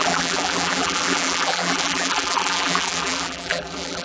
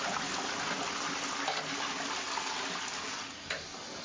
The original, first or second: second